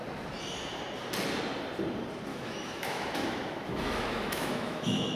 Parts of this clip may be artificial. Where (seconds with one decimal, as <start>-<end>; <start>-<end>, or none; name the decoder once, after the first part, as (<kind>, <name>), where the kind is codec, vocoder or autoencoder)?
2.3-5.2 (autoencoder, DAC-VAE)